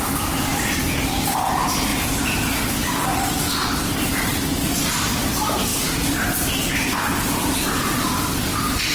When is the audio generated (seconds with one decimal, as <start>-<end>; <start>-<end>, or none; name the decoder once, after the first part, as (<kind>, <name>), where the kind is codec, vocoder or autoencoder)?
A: none